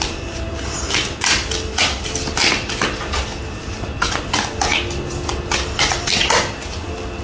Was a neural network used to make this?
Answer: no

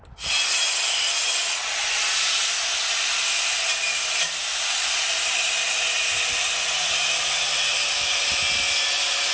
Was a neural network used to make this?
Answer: no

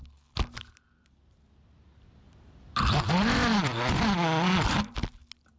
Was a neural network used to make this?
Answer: no